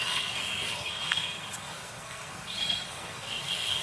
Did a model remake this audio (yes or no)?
yes